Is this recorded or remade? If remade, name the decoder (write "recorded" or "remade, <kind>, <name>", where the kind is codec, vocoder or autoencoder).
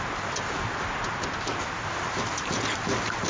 recorded